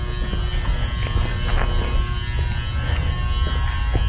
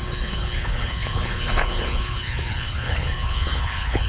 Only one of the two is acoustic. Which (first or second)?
first